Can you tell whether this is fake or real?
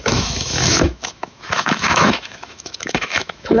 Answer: fake